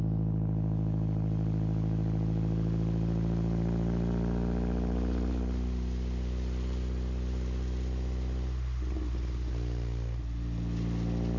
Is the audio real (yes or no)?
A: yes